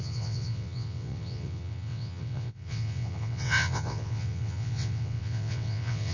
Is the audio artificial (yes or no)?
yes